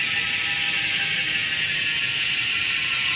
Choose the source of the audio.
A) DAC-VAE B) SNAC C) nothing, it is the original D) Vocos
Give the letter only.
C